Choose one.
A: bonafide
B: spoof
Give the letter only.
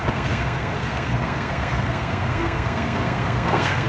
B